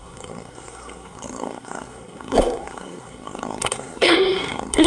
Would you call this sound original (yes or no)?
no